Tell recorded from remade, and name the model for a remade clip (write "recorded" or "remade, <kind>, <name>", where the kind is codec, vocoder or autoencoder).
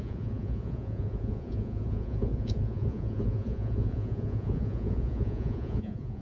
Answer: remade, vocoder, Vocos